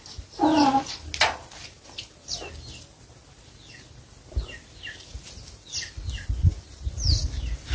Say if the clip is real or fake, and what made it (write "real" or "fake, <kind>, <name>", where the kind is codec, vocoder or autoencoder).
real